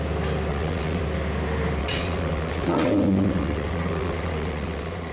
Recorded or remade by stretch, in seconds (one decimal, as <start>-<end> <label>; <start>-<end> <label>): 0.0-0.5 recorded; 0.5-1.0 remade; 1.0-1.8 recorded; 1.8-5.1 remade